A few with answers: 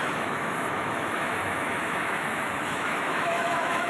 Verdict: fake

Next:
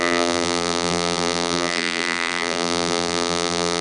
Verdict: fake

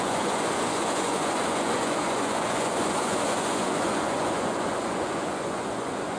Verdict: fake